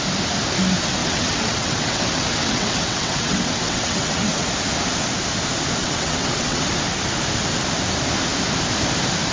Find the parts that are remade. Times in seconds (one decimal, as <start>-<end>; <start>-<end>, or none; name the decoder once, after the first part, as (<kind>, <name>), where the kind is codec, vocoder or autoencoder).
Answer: 1.0-4.5 (vocoder, WaveNeXt); 5.8-6.7